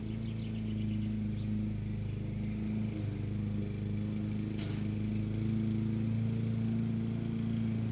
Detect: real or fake real